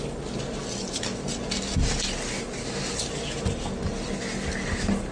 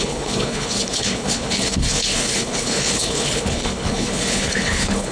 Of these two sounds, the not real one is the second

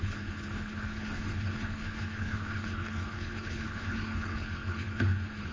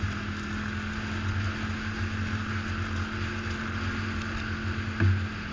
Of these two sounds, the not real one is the first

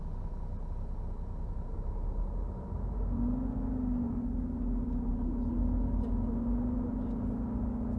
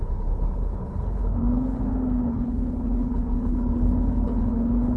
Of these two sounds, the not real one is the second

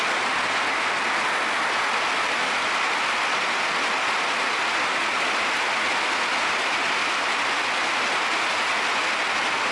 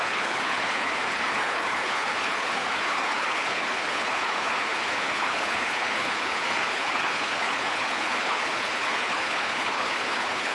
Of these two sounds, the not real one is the second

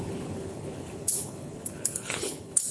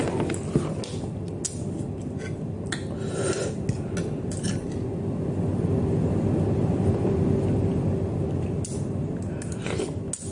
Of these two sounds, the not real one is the first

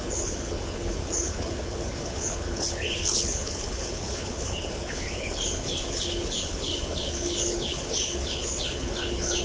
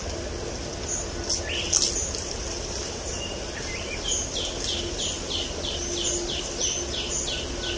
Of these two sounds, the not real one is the first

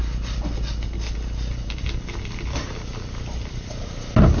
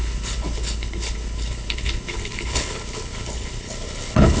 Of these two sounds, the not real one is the second